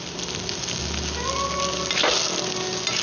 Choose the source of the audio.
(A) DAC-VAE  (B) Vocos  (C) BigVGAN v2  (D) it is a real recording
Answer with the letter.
D